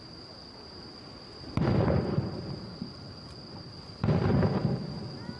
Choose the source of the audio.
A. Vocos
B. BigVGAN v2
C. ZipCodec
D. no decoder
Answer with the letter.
D